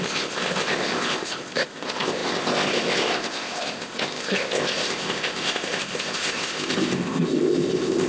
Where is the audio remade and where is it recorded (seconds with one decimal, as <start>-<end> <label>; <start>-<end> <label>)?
0.0-8.1 remade